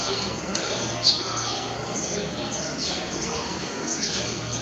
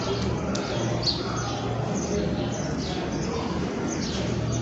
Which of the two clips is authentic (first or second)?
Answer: second